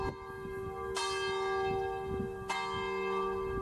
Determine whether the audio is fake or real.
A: real